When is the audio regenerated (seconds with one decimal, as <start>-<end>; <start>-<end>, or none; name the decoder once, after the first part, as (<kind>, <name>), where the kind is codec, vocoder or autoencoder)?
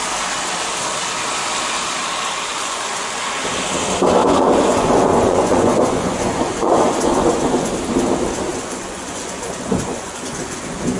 2.5-3.4 (vocoder, Vocos); 4.2-7.7; 8.5-11.0